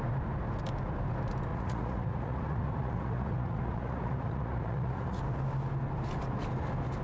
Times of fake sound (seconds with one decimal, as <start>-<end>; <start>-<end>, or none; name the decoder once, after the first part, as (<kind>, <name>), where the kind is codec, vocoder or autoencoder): 1.5-5.2 (vocoder, Vocos)